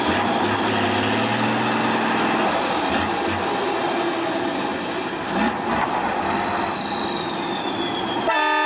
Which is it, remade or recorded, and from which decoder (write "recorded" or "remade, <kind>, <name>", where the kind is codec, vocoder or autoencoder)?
recorded